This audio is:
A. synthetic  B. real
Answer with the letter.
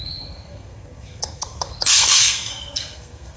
A